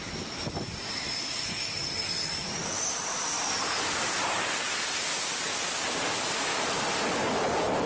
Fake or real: real